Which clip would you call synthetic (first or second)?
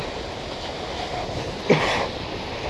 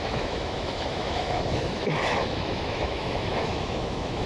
second